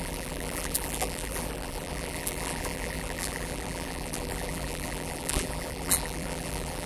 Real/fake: fake